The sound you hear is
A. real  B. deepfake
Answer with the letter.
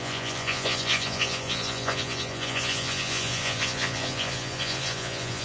B